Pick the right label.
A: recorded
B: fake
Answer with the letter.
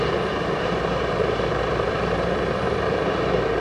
B